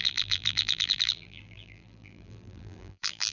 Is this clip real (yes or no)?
no